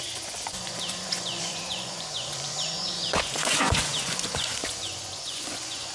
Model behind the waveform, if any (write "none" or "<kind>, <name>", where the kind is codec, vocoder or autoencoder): vocoder, Vocos